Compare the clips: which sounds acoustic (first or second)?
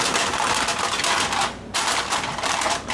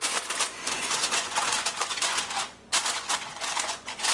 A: first